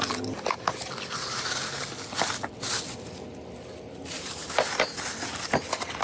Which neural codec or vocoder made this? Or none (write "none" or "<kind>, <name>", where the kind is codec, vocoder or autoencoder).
none